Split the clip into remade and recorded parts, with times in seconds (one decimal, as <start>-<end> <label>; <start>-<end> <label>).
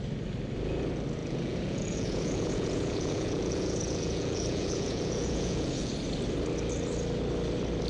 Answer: 0.0-1.2 recorded; 1.2-5.9 remade; 5.9-7.9 recorded